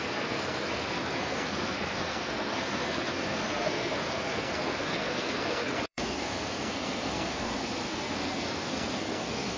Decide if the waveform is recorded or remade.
remade